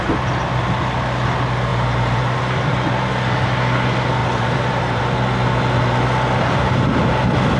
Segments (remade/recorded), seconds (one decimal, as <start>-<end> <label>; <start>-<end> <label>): 0.0-1.7 recorded; 1.7-2.4 remade; 2.4-4.2 recorded; 4.2-5.0 remade; 5.0-7.6 recorded